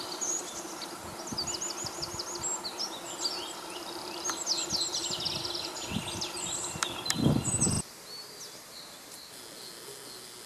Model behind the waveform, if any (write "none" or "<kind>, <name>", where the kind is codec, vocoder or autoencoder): none